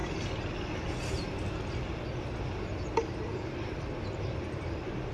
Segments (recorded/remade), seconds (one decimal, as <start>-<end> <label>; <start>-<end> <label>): 0.0-5.1 recorded